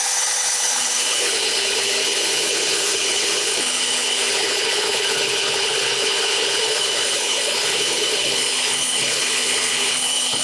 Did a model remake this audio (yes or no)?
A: yes